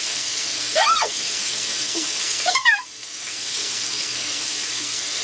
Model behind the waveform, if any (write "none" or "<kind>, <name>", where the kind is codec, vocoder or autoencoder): codec, SNAC